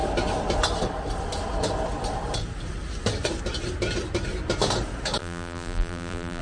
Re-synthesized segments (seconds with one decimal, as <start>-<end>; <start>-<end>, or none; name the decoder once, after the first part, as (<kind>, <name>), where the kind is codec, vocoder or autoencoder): 5.2-6.4 (vocoder, BigVGAN v2)